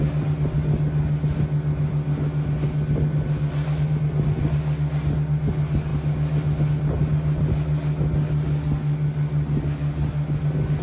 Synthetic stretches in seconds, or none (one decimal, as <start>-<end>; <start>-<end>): none